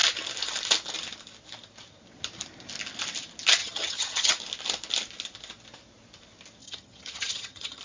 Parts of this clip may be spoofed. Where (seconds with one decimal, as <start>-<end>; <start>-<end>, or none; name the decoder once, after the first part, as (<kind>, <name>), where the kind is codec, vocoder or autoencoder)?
3.6-4.4 (vocoder, HiFi-GAN); 6.6-7.8